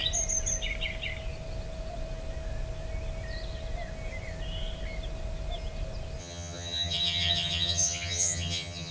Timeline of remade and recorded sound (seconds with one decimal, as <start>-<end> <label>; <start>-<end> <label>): 0.0-6.2 recorded; 6.2-8.9 remade